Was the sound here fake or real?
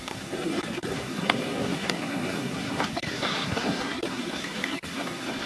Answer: fake